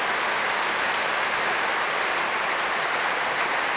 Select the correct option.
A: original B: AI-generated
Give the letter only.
A